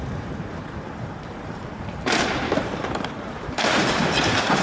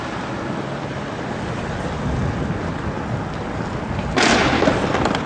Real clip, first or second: second